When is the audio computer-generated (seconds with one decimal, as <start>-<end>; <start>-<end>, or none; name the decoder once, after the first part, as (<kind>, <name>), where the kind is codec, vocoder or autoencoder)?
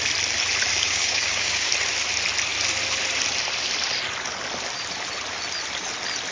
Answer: 0.7-1.7 (codec, DAC)